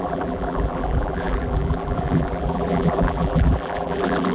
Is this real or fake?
fake